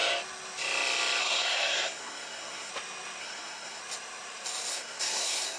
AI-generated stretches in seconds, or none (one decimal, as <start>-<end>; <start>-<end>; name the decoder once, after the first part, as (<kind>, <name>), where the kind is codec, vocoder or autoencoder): 1.2-2.7 (codec, SNAC); 3.2-3.8; 4.7-5.6